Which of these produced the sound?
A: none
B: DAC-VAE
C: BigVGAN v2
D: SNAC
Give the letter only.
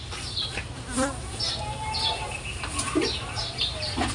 A